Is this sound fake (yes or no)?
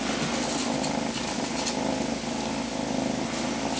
no